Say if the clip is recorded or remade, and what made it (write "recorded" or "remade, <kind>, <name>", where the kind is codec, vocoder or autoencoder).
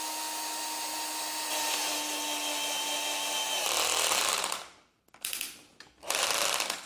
recorded